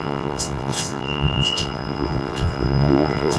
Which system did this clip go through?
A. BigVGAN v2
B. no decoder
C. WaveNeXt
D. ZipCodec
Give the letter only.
C